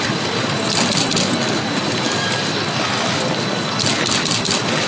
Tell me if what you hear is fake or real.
real